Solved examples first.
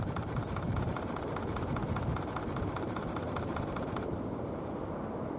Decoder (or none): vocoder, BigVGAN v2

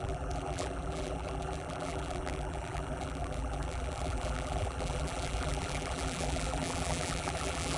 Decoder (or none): vocoder, BigVGAN v2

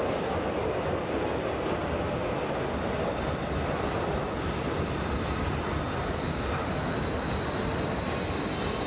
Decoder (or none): none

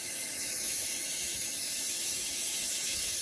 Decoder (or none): autoencoder, DAC-VAE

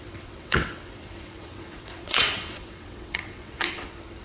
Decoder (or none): vocoder, WaveNeXt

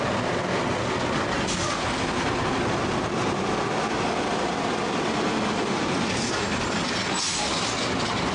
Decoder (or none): none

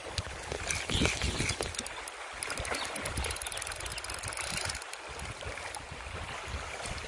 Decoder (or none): none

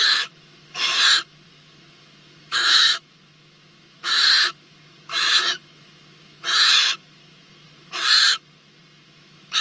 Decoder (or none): autoencoder, DAC-VAE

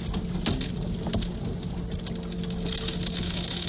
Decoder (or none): none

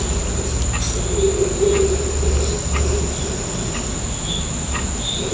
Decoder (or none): none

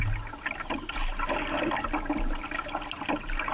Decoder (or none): none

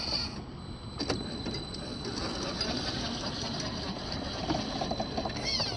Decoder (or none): none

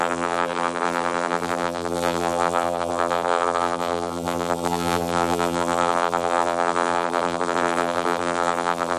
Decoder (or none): vocoder, BigVGAN v2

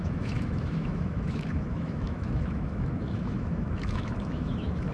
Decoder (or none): autoencoder, DAC-VAE